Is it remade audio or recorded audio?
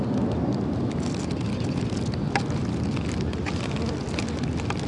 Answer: recorded